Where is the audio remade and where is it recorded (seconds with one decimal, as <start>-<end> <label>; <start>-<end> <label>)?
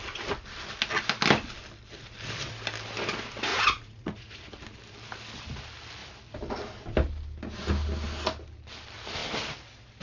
0.0-3.5 recorded; 3.5-4.4 remade; 4.4-10.0 recorded